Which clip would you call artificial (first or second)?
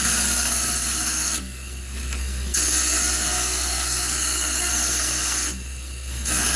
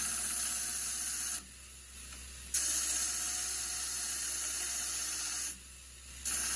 first